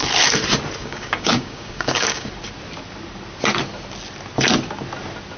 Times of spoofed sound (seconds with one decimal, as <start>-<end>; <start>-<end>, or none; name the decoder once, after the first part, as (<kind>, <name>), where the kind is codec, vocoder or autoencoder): 0.8-2.3 (codec, DAC)